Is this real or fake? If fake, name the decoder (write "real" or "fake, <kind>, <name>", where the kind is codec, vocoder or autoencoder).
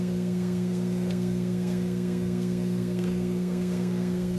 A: fake, codec, SNAC